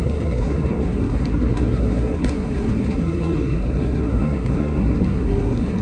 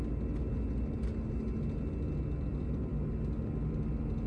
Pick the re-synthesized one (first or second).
first